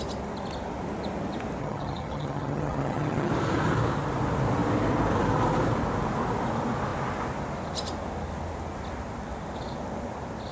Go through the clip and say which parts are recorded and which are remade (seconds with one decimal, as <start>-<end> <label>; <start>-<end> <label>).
0.0-1.6 recorded; 1.6-3.3 remade; 3.3-10.5 recorded